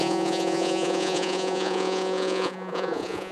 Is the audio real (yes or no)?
no